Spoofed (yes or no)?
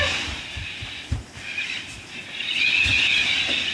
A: no